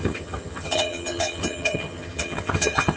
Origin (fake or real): fake